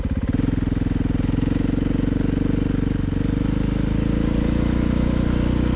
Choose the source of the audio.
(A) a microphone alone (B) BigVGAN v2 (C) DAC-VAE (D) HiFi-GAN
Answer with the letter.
A